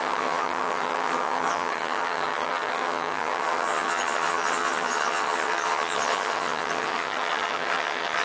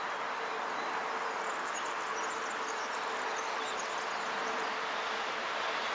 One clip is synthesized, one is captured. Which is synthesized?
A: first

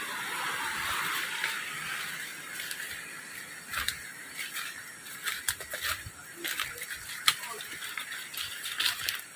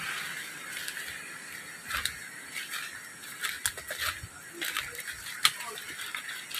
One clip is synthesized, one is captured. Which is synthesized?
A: first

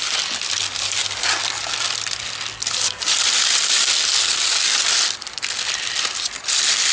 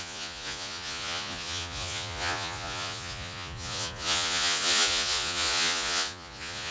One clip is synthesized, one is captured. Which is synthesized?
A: second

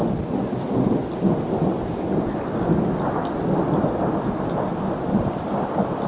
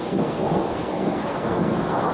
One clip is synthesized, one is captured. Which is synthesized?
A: second